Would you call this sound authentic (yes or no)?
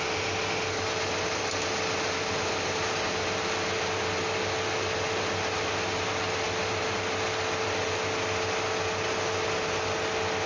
yes